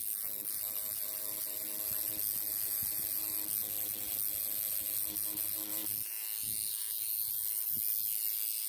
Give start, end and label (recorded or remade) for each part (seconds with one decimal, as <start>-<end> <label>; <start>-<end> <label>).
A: 0.0-8.7 recorded